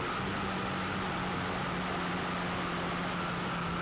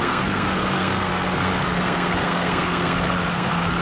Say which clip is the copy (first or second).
second